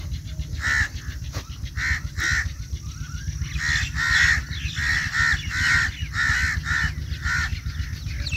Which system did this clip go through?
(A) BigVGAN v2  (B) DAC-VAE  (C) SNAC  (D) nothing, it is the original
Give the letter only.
D